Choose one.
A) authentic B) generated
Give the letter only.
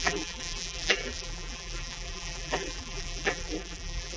B